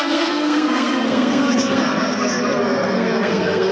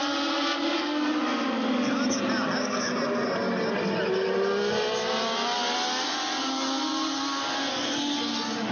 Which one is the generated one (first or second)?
first